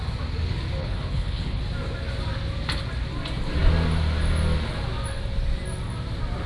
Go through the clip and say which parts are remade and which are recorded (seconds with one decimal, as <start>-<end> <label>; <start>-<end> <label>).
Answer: 0.0-0.8 recorded; 0.8-1.6 remade; 1.6-6.5 recorded